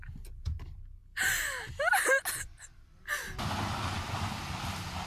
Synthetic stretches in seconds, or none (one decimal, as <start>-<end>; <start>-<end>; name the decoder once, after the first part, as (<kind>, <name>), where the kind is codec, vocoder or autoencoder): none